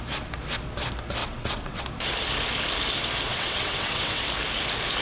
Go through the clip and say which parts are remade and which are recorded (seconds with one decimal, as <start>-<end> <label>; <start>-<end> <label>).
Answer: 0.0-1.2 recorded; 1.2-1.8 remade; 1.8-3.3 recorded; 3.3-4.2 remade; 4.2-5.0 recorded